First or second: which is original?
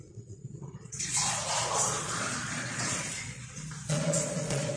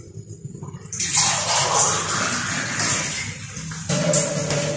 second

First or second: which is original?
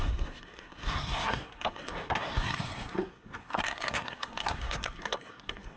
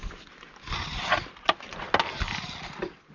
second